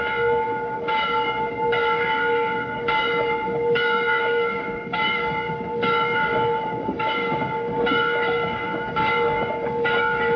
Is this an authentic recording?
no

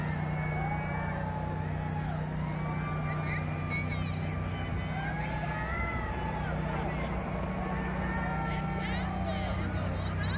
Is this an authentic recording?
yes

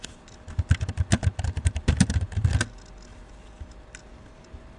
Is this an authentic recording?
yes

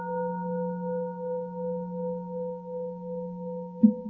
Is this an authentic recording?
yes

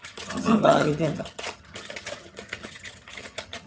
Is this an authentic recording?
no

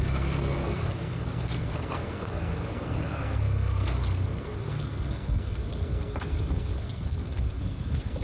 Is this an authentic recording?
no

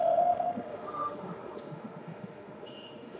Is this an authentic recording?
no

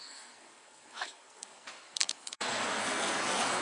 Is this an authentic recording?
no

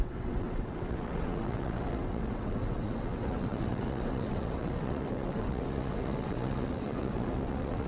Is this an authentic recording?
no